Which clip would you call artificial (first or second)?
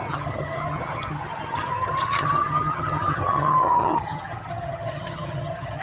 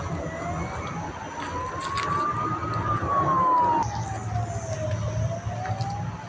first